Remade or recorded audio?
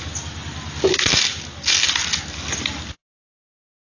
recorded